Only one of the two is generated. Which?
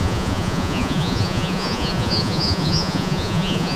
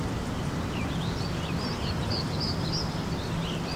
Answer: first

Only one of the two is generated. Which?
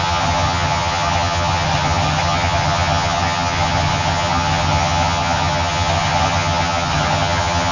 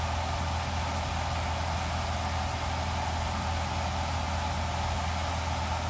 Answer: first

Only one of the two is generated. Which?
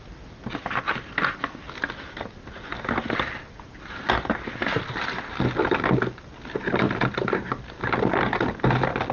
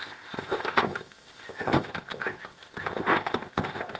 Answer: second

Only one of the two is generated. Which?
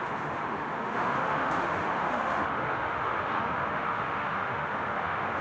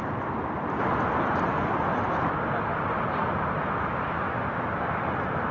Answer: first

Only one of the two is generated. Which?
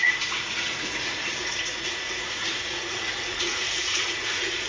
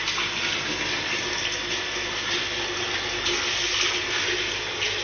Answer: first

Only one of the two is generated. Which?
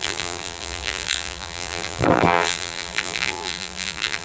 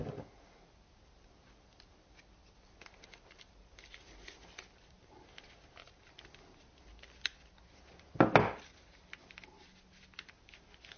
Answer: first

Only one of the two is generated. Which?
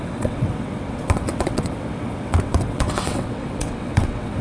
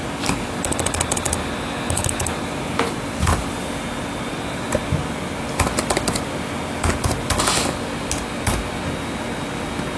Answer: first